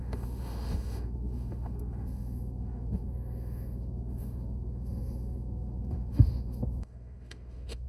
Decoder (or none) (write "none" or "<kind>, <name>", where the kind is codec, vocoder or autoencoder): autoencoder, DAC-VAE